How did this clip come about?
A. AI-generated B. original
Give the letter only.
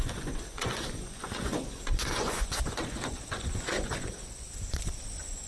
A